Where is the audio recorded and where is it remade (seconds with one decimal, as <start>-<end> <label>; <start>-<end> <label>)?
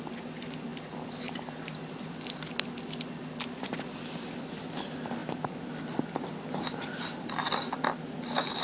0.0-8.6 recorded